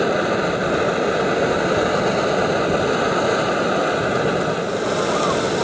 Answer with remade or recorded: recorded